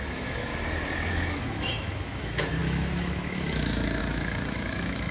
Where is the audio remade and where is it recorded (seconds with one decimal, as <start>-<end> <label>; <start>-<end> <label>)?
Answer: 0.0-0.5 remade; 0.5-1.1 recorded; 1.1-5.1 remade